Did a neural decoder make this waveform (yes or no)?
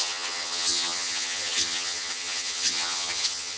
yes